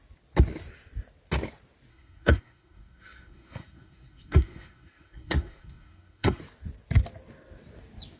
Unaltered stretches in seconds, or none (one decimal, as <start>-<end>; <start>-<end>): 0.0-1.9; 6.4-8.2